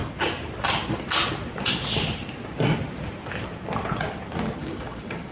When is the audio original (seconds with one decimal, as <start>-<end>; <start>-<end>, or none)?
0.0-4.6